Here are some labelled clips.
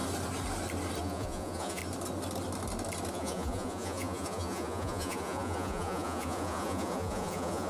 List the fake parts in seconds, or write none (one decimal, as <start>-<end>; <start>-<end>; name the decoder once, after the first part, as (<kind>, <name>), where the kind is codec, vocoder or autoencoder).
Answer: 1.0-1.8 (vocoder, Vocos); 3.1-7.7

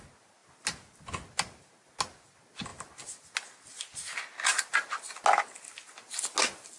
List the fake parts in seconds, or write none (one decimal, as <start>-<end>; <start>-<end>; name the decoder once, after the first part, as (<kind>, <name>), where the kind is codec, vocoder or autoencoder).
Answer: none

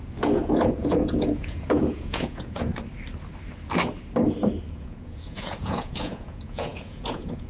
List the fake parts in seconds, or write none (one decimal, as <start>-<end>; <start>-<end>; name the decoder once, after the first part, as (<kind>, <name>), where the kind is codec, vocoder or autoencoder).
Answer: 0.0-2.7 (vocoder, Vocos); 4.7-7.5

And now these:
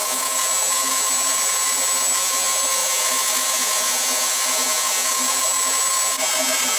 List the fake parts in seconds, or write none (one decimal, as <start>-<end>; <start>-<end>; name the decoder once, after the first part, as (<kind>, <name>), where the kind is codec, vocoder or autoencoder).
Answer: 0.0-6.8 (vocoder, Vocos)